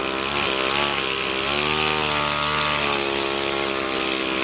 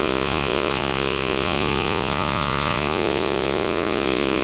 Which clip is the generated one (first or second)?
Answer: second